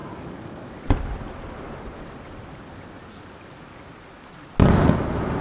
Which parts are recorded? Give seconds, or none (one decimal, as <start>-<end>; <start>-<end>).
0.0-5.4